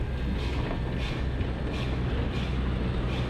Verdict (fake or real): real